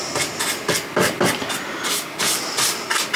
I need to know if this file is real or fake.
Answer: real